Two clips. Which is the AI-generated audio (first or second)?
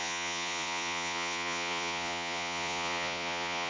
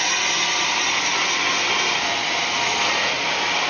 first